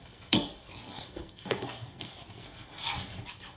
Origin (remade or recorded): remade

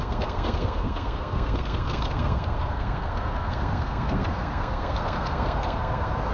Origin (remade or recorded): remade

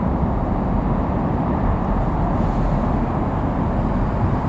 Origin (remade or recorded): remade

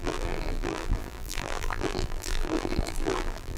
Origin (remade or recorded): remade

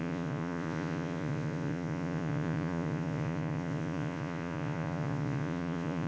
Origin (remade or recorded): remade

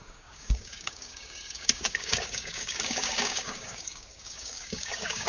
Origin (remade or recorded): remade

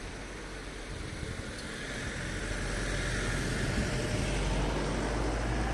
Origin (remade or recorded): recorded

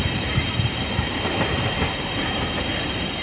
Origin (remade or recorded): recorded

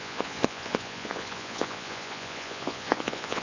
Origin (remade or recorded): remade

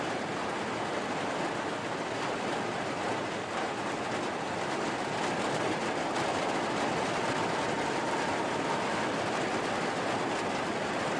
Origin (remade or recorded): recorded